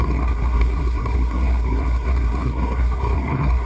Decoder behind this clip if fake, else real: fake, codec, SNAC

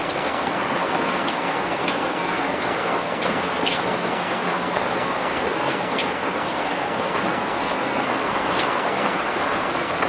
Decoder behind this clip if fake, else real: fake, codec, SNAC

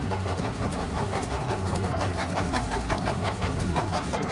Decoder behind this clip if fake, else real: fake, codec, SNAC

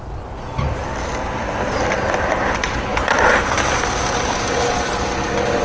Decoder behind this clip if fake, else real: real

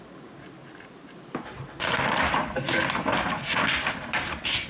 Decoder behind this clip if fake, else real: real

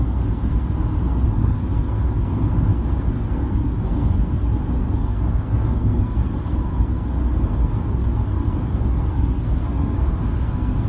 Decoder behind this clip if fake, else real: fake, codec, SNAC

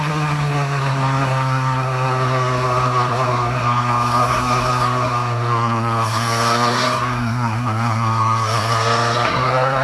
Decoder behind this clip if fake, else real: fake, codec, SNAC